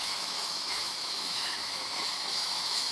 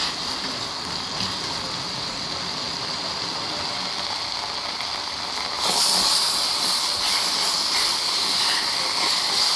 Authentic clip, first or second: second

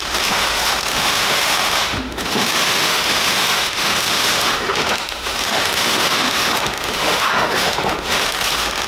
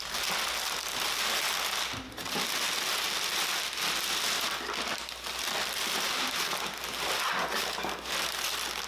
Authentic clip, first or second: second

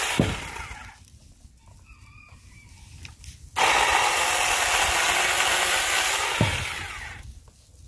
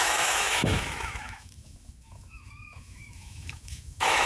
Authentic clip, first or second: first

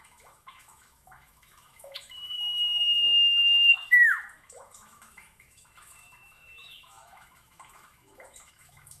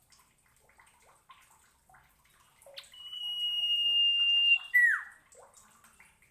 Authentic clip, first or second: second